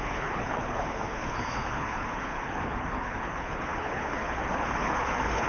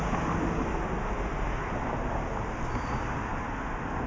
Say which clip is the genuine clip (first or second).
second